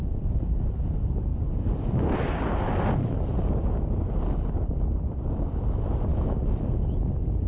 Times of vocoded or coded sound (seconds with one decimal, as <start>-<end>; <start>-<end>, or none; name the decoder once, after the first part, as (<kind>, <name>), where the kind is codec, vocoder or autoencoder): 0.0-1.3 (vocoder, BigVGAN v2); 4.7-6.1; 7.1-7.5

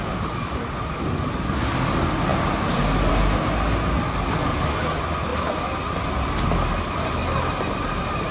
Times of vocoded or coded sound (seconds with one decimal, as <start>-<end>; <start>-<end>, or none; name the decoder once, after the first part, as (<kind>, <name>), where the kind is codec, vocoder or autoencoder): none

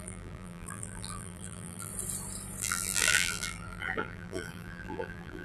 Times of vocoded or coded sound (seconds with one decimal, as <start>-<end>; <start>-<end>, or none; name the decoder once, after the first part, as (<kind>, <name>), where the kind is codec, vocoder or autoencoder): 0.0-1.9 (vocoder, BigVGAN v2); 2.6-5.4

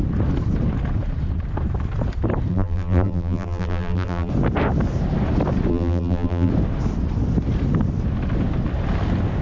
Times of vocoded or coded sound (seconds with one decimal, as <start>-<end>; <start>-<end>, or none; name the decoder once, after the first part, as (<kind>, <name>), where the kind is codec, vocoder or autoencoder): 2.5-4.3 (vocoder, BigVGAN v2); 5.7-6.5

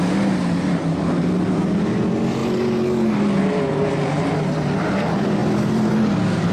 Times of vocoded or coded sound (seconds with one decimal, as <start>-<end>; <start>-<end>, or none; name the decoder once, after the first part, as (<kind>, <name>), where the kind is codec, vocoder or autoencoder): none

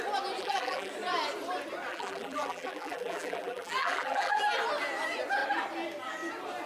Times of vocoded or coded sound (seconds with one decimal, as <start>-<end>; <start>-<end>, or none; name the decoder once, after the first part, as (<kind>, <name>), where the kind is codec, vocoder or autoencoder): 0.4-0.9 (vocoder, BigVGAN v2); 1.9-4.4

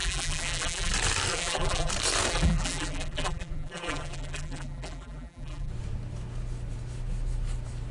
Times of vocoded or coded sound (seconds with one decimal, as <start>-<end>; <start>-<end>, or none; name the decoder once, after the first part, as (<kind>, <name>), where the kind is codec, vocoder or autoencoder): 0.0-0.9 (vocoder, BigVGAN v2); 1.3-1.9; 2.3-5.7

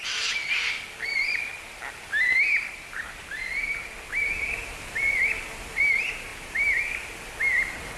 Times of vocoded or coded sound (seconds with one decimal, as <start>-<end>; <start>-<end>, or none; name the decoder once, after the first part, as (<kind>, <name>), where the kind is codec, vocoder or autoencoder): 0.0-3.5 (vocoder, BigVGAN v2); 5.8-6.3